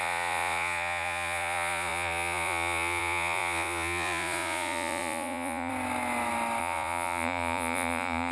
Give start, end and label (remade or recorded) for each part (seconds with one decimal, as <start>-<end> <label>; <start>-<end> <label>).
0.0-5.7 remade; 5.7-6.6 recorded; 6.6-8.3 remade